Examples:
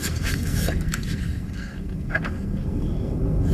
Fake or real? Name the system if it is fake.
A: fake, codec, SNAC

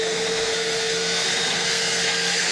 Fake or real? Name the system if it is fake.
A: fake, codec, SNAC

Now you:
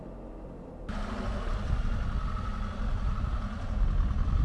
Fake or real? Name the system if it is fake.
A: real